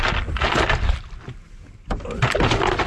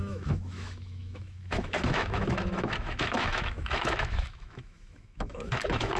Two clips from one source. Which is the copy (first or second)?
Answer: second